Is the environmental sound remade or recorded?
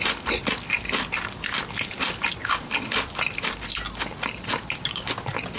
recorded